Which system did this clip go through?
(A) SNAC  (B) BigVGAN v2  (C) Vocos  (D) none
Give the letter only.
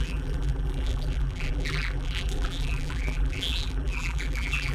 B